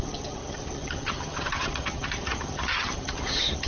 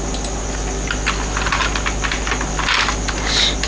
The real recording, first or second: second